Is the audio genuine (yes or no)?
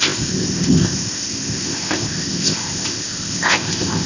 no